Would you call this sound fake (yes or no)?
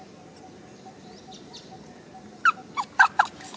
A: no